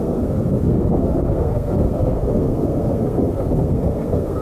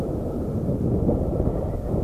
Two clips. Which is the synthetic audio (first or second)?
first